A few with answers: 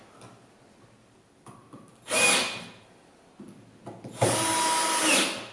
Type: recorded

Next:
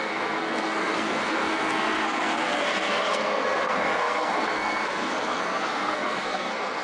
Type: remade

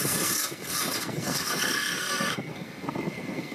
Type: remade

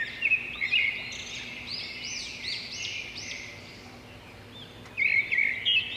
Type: recorded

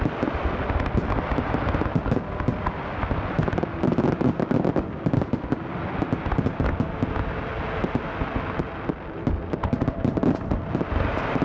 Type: recorded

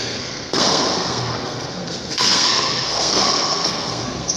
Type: remade